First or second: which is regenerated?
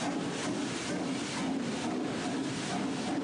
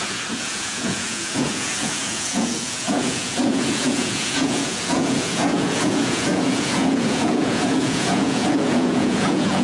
second